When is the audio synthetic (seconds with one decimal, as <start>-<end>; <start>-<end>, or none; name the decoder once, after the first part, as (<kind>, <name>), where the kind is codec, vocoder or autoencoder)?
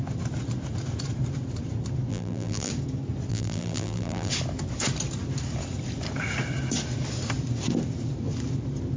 2.1-2.7 (vocoder, BigVGAN v2); 3.3-4.3